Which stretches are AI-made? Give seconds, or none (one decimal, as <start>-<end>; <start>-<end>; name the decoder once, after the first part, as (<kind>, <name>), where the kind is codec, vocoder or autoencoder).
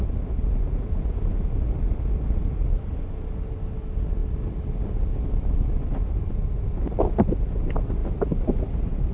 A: 0.4-1.2 (vocoder, Vocos)